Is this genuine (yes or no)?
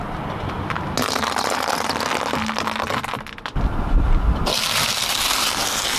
yes